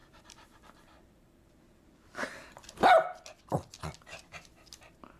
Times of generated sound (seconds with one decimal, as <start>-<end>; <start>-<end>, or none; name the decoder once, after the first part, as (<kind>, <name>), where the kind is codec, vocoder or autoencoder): 0.0-2.3 (vocoder, BigVGAN v2)